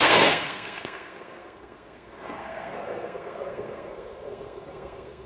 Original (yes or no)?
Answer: no